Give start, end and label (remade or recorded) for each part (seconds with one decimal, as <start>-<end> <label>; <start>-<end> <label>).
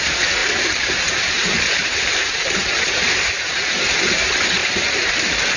0.0-0.4 recorded; 0.4-3.8 remade; 3.8-4.6 recorded; 4.6-5.6 remade